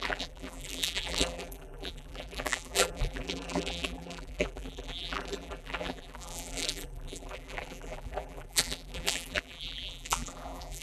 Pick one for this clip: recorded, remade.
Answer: remade